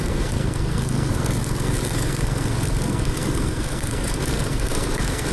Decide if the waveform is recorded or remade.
remade